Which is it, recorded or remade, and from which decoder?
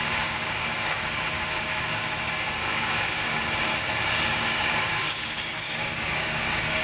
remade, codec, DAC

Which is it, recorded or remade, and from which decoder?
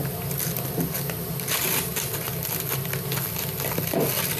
recorded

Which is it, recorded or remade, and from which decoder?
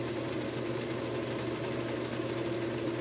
recorded